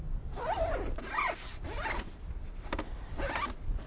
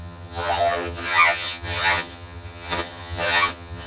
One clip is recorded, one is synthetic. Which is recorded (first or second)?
first